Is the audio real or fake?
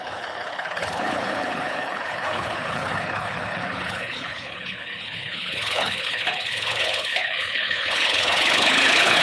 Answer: fake